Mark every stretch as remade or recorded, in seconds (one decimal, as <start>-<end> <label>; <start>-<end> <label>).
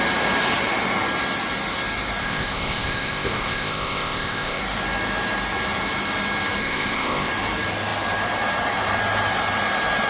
0.0-2.2 recorded; 2.2-4.6 remade; 4.6-6.6 recorded; 6.6-7.3 remade; 7.3-10.1 recorded